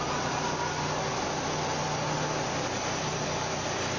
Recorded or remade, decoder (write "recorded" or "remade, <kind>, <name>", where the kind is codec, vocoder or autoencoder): recorded